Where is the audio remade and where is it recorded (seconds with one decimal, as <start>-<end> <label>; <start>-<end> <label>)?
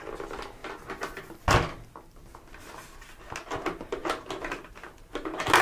0.0-5.6 recorded